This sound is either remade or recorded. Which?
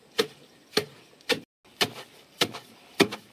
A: recorded